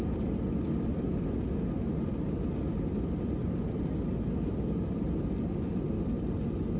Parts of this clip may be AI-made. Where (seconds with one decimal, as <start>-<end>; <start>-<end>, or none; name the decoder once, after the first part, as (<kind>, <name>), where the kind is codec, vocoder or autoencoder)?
none